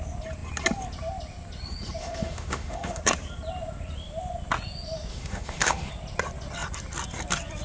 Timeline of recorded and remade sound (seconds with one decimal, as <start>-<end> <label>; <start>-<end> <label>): 0.0-2.0 recorded; 2.0-3.0 remade; 3.0-5.1 recorded; 5.1-5.9 remade; 5.9-7.6 recorded